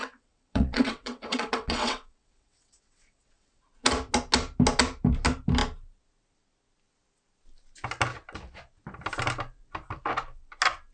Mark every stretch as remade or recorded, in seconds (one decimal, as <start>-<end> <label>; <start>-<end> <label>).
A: 0.0-3.6 remade; 3.6-10.9 recorded